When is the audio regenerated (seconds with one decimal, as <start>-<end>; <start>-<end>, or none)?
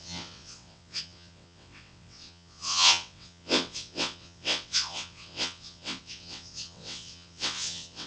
0.0-8.1